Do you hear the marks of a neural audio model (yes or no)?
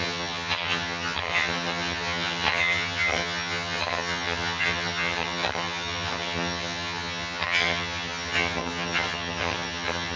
yes